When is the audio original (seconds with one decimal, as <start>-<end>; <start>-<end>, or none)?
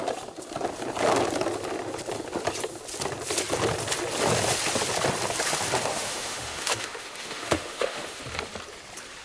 0.0-5.9; 8.2-9.2